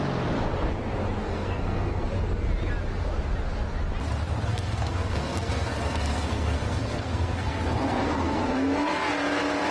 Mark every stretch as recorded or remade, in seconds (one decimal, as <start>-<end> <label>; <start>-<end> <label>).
0.0-1.2 recorded; 1.2-2.1 remade; 2.1-4.5 recorded; 4.5-9.1 remade; 9.1-9.7 recorded